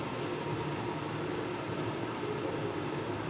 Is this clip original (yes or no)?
yes